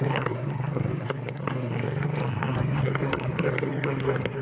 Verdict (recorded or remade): remade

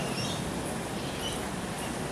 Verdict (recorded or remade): recorded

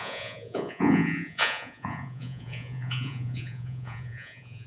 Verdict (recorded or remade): remade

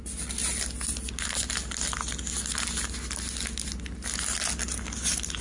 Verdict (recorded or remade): recorded